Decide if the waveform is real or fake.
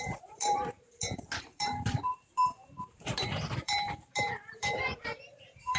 fake